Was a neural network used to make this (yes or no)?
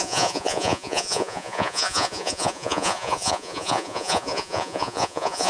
yes